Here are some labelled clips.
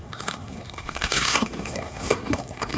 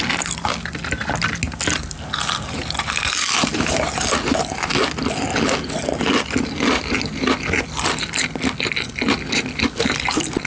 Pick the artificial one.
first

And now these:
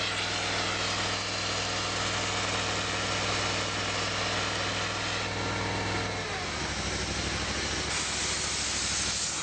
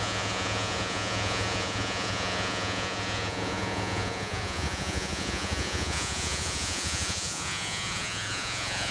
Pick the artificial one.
second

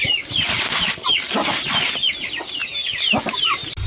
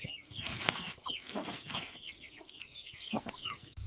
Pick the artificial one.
second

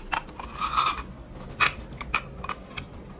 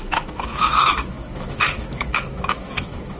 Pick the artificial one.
second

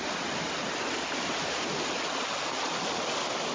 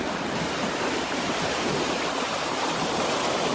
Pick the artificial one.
second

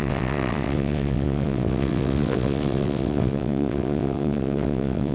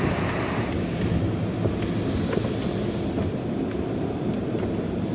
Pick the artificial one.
first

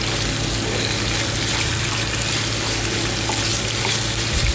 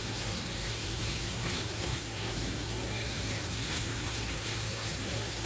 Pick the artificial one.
second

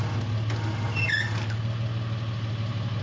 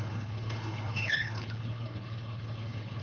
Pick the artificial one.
second